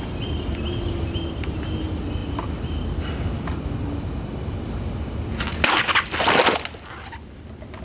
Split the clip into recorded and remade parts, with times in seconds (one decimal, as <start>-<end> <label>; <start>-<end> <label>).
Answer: 0.0-7.8 recorded